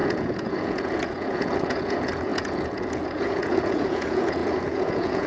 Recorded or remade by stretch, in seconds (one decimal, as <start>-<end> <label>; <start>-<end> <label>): 0.0-5.3 remade